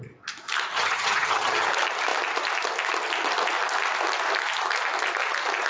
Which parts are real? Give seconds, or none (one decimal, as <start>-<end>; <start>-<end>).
0.0-0.7; 1.7-5.7